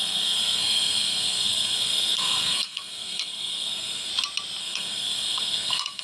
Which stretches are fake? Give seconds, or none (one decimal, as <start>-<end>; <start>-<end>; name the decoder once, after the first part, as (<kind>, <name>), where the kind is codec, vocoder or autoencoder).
0.0-4.1 (codec, SNAC); 4.6-6.0